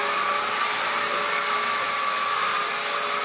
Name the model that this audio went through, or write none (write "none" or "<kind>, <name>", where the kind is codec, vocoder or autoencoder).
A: none